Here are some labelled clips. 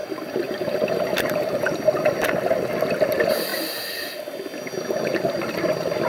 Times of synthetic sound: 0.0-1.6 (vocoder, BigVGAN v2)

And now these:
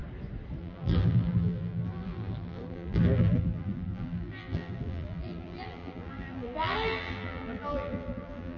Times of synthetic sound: 0.6-8.6 (vocoder, BigVGAN v2)

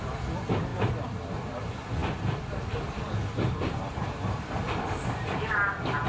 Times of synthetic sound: 0.7-1.6 (vocoder, BigVGAN v2); 2.0-5.5